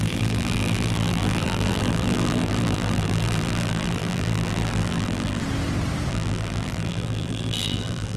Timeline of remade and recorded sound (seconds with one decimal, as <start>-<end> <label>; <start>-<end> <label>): 0.0-5.4 remade; 5.4-6.1 recorded; 6.1-8.2 remade